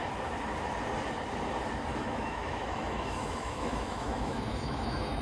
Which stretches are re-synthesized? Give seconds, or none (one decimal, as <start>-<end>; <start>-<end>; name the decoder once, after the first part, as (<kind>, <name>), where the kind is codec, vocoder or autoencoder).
1.9-5.2 (autoencoder, DAC-VAE)